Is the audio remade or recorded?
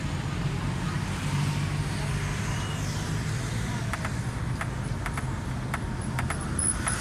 recorded